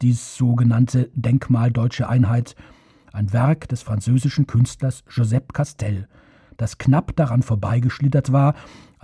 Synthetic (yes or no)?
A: no